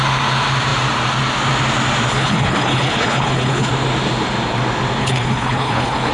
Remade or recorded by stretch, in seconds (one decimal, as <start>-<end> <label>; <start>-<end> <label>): 0.0-2.1 recorded; 2.1-3.7 remade; 3.7-5.0 recorded; 5.0-6.1 remade